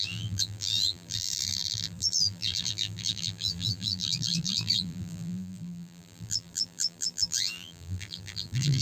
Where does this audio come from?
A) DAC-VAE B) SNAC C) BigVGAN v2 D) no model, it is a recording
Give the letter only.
C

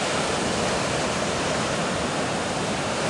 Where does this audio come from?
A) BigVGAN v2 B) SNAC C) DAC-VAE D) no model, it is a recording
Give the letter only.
A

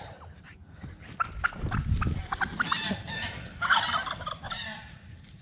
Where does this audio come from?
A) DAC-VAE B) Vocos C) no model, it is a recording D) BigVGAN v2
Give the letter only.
C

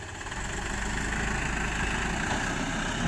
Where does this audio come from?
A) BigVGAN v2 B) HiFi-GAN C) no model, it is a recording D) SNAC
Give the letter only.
C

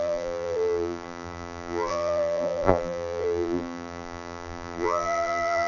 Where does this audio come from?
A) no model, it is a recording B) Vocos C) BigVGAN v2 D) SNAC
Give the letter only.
C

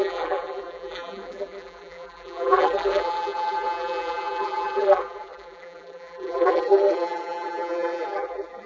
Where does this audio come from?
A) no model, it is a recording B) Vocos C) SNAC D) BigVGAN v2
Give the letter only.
D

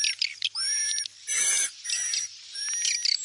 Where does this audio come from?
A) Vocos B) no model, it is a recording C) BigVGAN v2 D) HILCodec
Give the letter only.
B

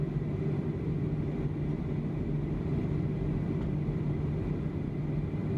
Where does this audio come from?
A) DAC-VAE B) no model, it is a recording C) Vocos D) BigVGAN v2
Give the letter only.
B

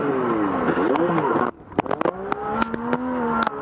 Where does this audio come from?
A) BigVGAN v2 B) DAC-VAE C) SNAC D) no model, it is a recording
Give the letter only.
D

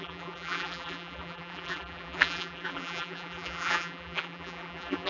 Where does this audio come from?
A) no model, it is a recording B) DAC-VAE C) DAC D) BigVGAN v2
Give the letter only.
D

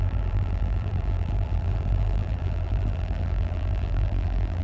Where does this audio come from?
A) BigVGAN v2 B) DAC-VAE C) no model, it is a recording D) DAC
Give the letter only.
A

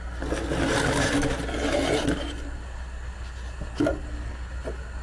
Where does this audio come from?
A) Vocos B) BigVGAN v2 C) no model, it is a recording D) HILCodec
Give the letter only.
C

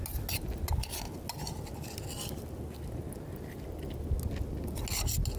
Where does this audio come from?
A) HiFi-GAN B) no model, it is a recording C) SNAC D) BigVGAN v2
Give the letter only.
B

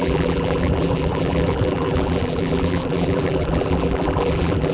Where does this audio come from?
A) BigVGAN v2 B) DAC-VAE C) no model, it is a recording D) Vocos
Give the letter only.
A